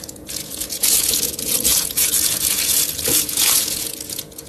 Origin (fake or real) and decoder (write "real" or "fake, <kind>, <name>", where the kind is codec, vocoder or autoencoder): fake, vocoder, Vocos